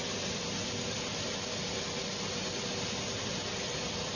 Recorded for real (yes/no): yes